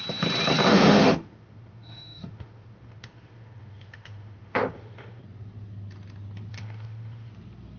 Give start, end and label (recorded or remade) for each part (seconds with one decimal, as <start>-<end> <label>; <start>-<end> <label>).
0.0-0.7 recorded; 0.7-5.2 remade; 5.2-6.5 recorded; 6.5-7.3 remade; 7.3-7.8 recorded